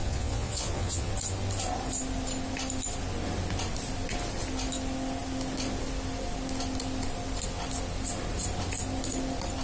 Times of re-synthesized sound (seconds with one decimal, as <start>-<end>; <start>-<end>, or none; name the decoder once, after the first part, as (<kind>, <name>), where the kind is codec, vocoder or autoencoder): 0.0-1.1 (vocoder, Vocos)